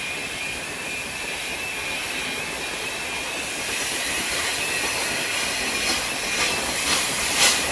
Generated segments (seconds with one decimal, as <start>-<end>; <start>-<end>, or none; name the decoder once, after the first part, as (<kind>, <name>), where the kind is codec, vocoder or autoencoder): 0.0-1.5 (vocoder, BigVGAN v2); 3.8-4.5; 6.7-7.7